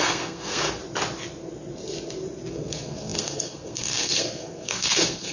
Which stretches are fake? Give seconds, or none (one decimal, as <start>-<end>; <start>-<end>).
0.0-0.8; 2.5-5.3